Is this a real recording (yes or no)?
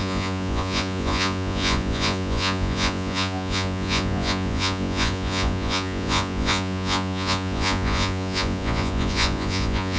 no